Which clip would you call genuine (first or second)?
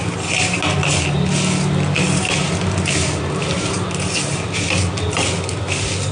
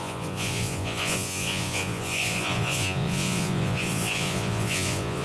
first